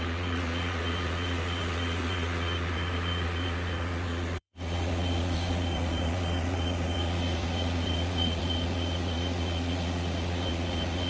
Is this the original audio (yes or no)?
no